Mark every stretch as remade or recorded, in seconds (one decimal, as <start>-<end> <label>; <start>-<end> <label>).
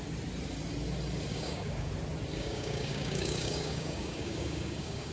0.0-1.3 recorded; 1.3-1.9 remade; 1.9-2.3 recorded; 2.3-5.1 remade